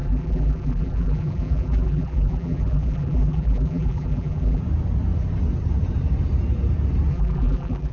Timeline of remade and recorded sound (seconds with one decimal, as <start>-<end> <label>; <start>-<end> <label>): 0.0-4.6 remade; 4.6-7.1 recorded; 7.1-7.9 remade